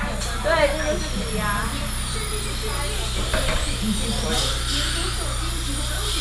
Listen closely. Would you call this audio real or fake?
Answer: real